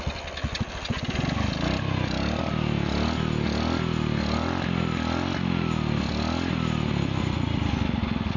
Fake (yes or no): no